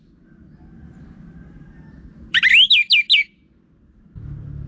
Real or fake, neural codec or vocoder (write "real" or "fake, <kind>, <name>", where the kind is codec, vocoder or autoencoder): real